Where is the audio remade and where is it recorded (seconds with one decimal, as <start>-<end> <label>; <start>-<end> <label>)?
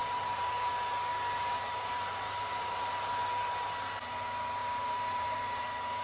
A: 0.0-0.7 remade; 0.7-1.1 recorded; 1.1-3.1 remade; 3.1-4.6 recorded; 4.6-5.6 remade; 5.6-6.0 recorded